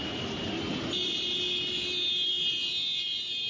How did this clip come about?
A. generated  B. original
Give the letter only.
B